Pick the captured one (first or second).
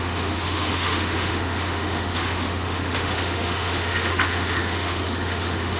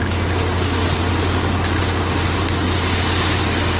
second